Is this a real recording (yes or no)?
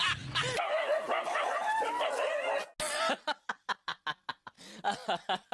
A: yes